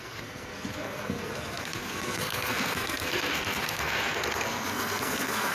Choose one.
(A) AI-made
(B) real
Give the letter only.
A